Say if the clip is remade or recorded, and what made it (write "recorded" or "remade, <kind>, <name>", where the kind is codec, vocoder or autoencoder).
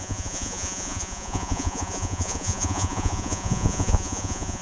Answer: remade, vocoder, Vocos